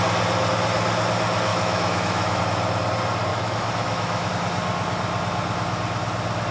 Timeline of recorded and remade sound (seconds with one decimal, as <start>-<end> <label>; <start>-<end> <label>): 0.0-1.5 recorded; 1.5-2.4 remade; 2.4-3.3 recorded; 3.3-4.3 remade; 4.3-6.5 recorded